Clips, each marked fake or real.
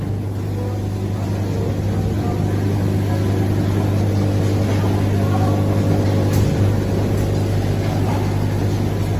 real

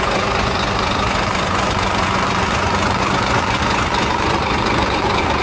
fake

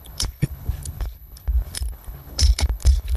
fake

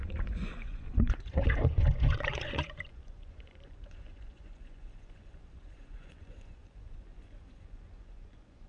fake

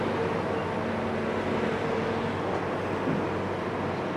real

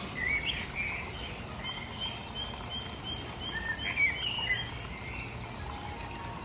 real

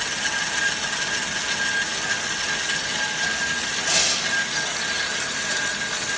real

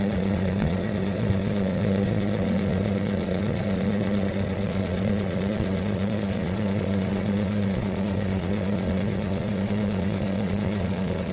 fake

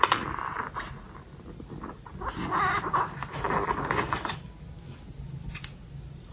real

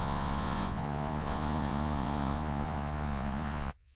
fake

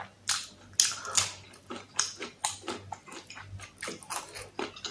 real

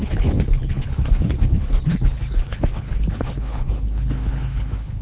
fake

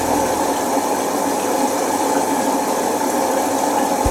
real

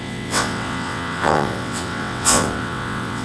fake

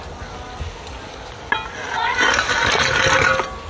real